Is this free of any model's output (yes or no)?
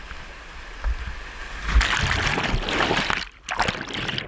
yes